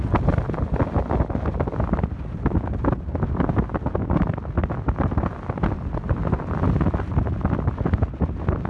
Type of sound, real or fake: real